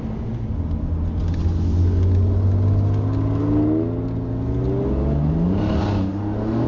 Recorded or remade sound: recorded